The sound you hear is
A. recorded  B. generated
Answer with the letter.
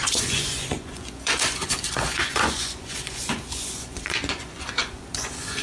B